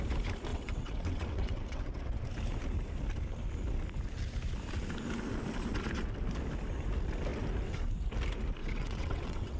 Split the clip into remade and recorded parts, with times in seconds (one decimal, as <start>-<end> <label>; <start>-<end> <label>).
0.0-0.5 recorded; 0.5-2.2 remade; 2.2-8.6 recorded; 8.6-9.6 remade